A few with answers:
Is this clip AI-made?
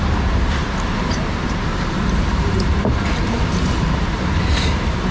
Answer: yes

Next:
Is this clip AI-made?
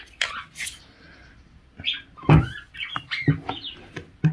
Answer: no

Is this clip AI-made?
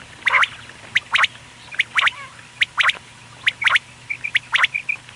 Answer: yes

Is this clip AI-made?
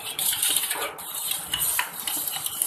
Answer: yes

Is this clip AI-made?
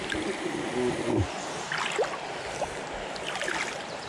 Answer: no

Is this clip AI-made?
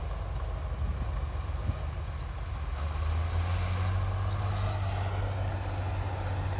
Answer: no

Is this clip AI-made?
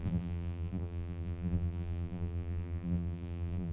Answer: yes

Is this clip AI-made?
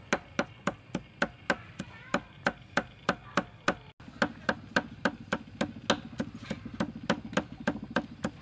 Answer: no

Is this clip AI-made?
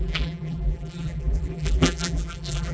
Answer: yes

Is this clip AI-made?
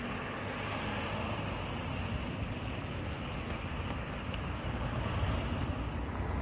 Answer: no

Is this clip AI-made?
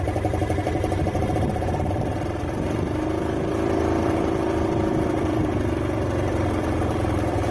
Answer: yes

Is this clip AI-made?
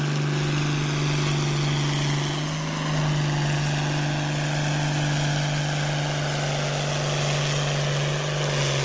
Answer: no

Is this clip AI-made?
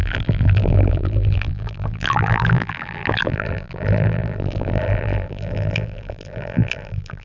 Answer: yes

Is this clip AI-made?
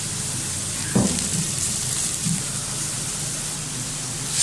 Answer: yes